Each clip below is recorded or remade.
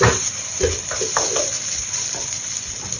remade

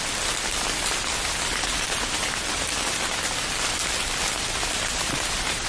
recorded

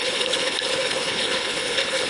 remade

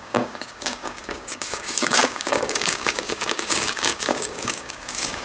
remade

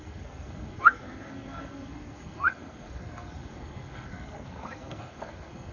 remade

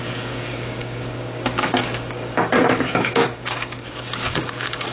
remade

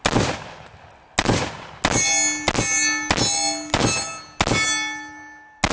recorded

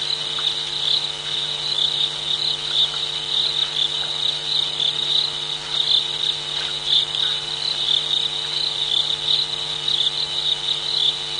recorded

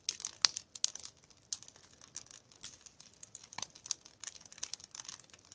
recorded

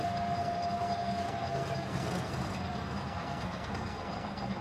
remade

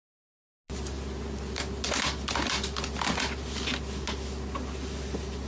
recorded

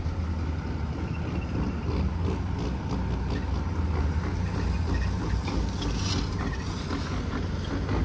recorded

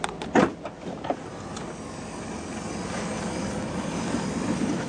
recorded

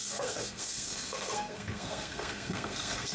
remade